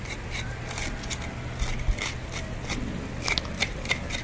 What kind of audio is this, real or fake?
real